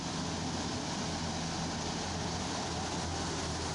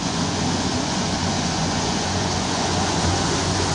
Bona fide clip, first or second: first